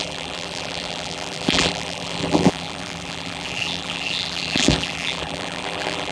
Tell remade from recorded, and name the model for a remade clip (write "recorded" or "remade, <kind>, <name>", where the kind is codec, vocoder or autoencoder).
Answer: remade, vocoder, BigVGAN v2